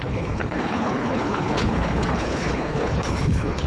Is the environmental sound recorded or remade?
remade